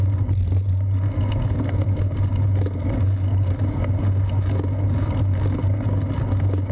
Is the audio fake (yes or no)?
no